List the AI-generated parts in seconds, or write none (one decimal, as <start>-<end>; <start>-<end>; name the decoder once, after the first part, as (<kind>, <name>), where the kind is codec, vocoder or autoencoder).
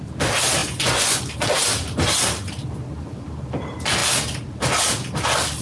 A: 0.6-1.2 (vocoder, Vocos)